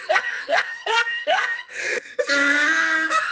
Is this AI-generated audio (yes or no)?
yes